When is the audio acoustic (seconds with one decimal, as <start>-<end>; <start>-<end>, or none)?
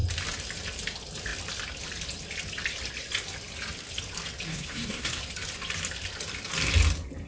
0.0-4.5; 5.2-7.3